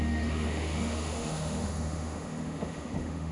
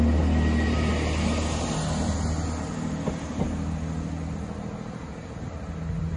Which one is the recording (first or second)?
second